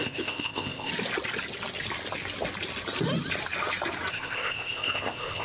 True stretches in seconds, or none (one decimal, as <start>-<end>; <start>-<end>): 0.9-4.1